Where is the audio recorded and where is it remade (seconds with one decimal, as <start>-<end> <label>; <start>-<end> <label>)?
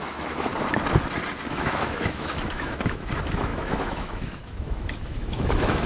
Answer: 0.0-0.5 remade; 0.5-1.5 recorded; 1.5-5.9 remade